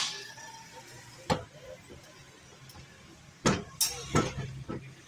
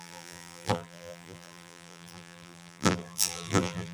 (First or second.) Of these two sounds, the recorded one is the first